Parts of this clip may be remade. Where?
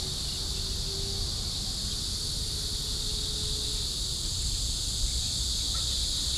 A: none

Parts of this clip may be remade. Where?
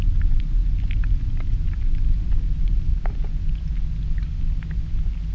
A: 2.9-3.6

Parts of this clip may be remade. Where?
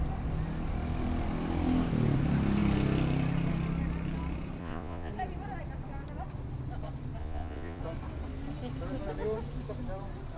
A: 4.6-5.1; 7.2-7.8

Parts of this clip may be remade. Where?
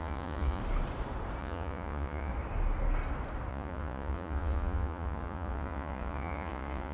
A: 0.0-0.6; 1.4-2.3; 3.5-6.9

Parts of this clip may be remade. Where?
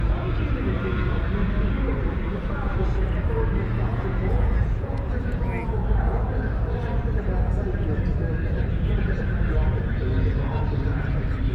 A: 3.9-5.4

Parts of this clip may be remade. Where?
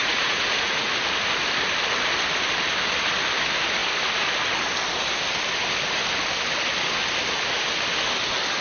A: 0.0-0.9